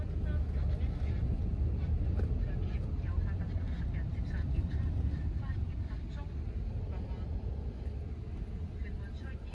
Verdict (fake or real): real